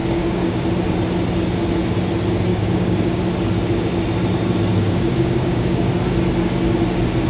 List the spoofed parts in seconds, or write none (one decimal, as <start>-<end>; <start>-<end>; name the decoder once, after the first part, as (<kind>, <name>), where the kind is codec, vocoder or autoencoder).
0.0-0.6 (codec, DAC); 2.5-3.2; 4.7-5.9